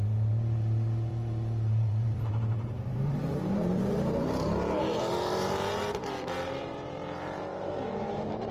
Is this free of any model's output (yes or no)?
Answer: no